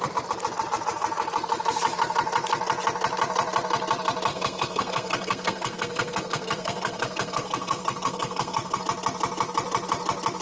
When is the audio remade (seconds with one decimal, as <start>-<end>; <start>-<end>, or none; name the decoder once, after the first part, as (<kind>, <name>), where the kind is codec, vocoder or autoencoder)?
4.3-8.8 (codec, SNAC)